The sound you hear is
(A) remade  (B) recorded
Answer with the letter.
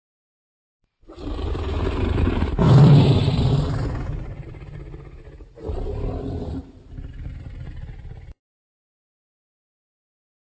A